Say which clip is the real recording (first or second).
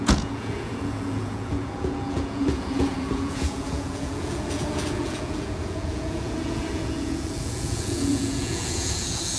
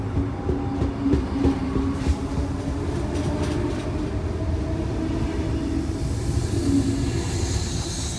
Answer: second